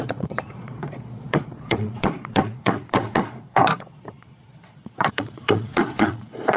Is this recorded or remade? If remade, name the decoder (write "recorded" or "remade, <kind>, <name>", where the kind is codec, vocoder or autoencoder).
remade, vocoder, Vocos